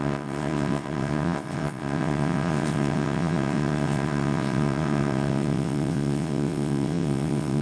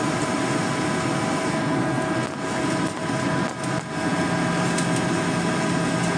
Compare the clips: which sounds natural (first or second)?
second